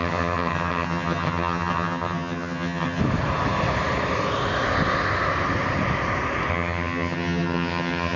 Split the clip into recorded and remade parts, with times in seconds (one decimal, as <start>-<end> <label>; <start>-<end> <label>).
0.0-3.0 remade; 3.0-6.5 recorded; 6.5-8.2 remade